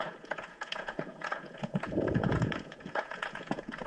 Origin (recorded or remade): remade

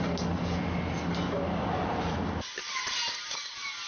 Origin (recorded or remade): recorded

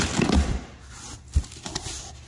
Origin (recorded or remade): recorded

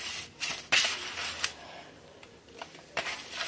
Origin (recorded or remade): remade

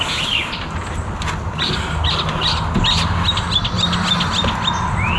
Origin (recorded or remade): recorded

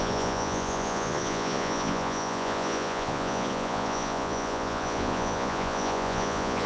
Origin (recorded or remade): remade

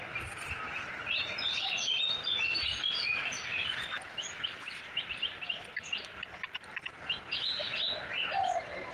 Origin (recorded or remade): recorded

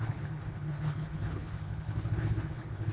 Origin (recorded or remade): remade